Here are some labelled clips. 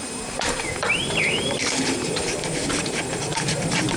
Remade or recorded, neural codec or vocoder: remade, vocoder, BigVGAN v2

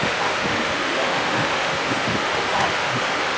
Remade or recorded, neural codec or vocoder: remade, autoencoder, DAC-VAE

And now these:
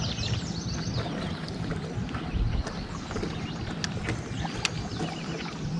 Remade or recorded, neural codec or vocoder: recorded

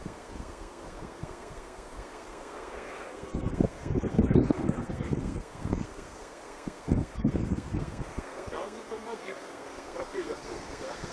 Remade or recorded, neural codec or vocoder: remade, codec, SNAC